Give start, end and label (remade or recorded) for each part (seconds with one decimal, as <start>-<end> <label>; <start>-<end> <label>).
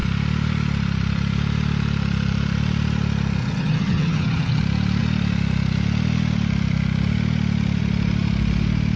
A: 0.0-3.4 recorded; 3.4-4.6 remade; 4.6-9.0 recorded